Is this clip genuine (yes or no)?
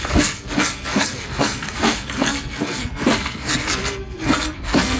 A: no